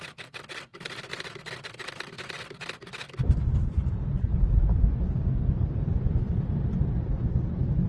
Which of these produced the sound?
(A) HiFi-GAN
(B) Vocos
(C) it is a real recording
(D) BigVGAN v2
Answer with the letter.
D